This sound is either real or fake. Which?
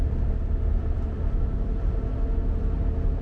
fake